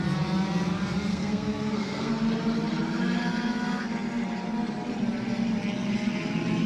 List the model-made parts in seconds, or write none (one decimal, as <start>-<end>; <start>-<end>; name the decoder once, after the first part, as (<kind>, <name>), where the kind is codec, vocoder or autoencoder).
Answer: 1.1-2.1 (codec, SNAC)